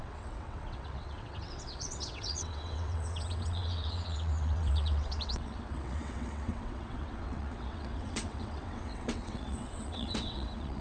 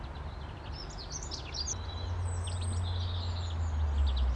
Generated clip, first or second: first